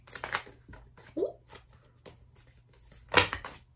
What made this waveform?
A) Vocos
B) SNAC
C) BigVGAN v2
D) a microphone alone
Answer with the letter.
D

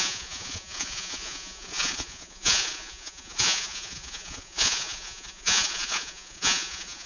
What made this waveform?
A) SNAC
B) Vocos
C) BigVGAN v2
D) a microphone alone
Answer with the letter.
B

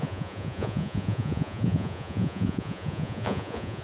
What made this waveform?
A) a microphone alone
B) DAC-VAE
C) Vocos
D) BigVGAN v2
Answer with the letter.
C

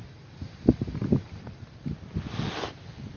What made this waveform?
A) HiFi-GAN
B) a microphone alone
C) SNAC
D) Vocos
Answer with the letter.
B